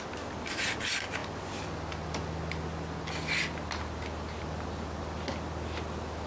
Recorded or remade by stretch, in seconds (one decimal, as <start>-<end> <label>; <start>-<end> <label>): 0.0-6.3 recorded